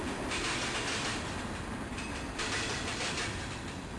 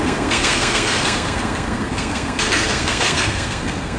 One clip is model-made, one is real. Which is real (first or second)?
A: first